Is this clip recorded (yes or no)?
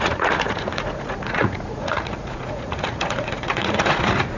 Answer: no